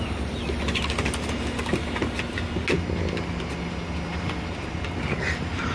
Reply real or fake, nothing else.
real